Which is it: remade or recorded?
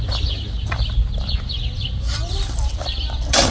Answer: remade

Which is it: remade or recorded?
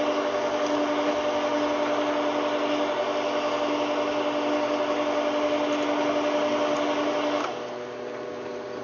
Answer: recorded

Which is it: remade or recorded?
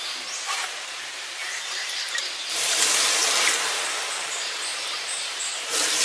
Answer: remade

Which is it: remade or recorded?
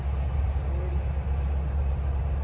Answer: recorded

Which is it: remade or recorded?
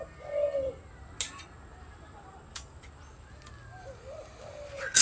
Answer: recorded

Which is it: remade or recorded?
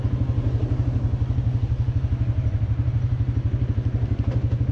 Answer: recorded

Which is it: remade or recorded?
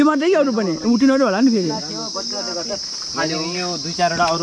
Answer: recorded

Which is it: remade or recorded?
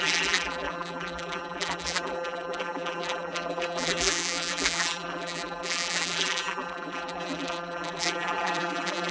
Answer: remade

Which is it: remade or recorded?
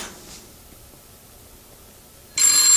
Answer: recorded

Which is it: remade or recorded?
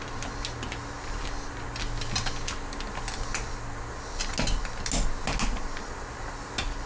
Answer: recorded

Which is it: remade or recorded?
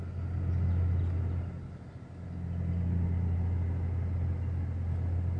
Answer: recorded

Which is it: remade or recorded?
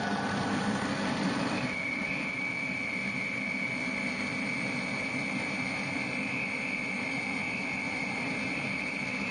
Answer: remade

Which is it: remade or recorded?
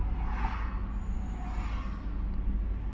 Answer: recorded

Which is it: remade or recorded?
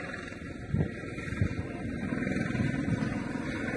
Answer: recorded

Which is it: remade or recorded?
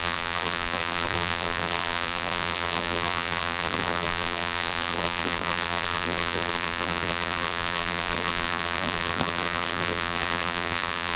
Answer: remade